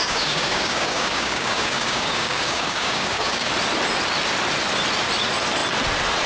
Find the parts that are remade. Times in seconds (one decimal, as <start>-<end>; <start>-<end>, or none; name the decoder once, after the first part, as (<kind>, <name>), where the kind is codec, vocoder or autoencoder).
0.0-3.5 (codec, DAC)